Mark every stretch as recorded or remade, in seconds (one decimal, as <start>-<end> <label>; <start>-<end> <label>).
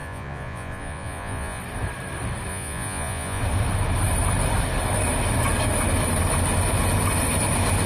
0.0-1.6 remade; 1.6-2.5 recorded; 2.5-3.4 remade; 3.4-7.9 recorded